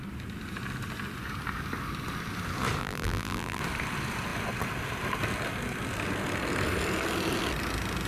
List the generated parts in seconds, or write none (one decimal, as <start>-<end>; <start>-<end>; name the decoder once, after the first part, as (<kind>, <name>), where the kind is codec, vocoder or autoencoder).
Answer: 2.8-3.6 (vocoder, BigVGAN v2)